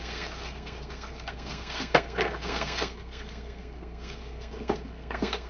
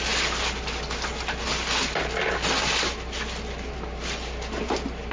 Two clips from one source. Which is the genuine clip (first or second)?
second